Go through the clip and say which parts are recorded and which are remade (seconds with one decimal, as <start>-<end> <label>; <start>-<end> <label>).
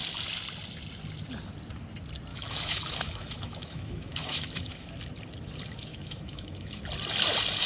0.0-2.3 recorded; 2.3-4.9 remade; 4.9-5.9 recorded; 5.9-6.8 remade; 6.8-7.7 recorded